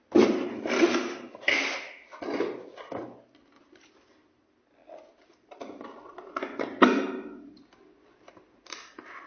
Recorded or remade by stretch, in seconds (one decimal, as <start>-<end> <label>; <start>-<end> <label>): 0.0-9.3 recorded